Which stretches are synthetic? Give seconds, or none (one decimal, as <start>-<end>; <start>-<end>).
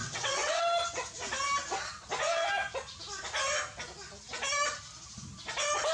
0.0-0.6